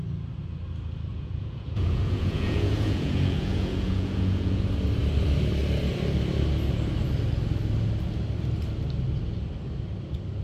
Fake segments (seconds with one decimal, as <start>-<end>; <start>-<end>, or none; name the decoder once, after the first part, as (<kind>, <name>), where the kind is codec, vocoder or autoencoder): 1.1-4.6 (vocoder, Vocos)